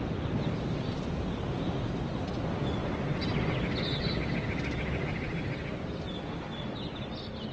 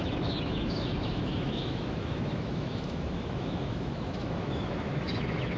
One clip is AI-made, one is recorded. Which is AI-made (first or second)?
second